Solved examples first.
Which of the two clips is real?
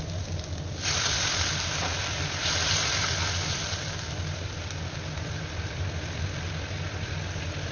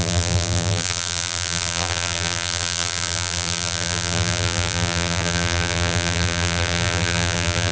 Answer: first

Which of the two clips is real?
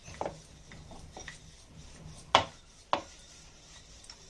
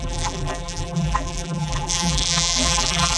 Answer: first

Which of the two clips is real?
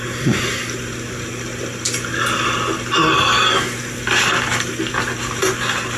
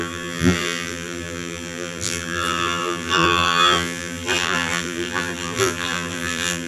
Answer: first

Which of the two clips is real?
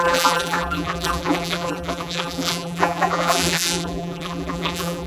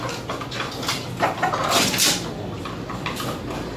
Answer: second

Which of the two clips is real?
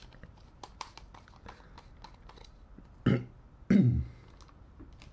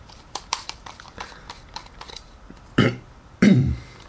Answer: first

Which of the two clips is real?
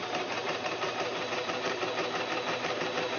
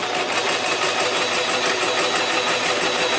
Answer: second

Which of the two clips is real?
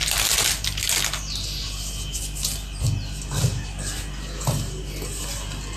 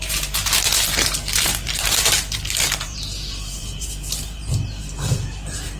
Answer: first